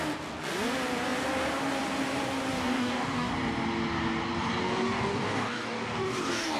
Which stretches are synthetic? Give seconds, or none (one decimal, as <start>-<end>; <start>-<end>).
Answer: 2.5-3.3; 4.6-6.6